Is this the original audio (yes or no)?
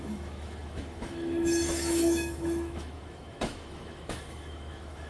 no